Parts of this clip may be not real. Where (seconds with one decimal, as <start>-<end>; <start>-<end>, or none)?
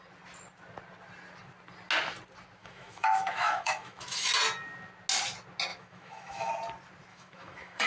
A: 2.6-4.3; 5.7-6.5; 7.1-7.9